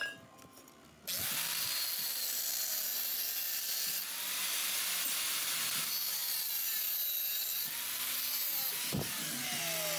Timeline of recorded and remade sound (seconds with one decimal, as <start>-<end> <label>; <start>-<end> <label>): 0.0-10.0 recorded